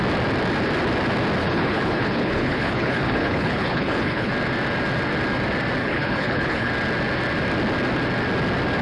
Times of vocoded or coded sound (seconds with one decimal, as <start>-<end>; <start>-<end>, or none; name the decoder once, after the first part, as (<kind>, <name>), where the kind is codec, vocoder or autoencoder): 1.4-4.3 (codec, HILCodec); 5.8-6.7